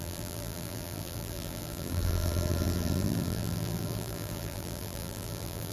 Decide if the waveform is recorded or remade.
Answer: remade